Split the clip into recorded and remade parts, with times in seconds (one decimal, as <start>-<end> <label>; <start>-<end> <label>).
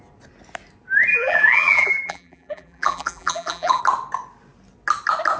0.0-1.1 recorded; 1.1-3.8 remade; 3.8-5.4 recorded